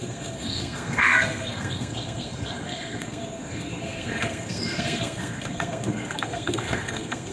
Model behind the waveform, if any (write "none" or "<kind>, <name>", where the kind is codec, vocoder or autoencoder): codec, SNAC